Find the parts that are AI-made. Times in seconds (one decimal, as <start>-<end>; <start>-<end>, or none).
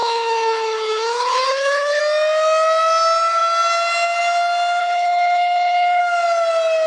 0.0-2.0; 4.8-6.0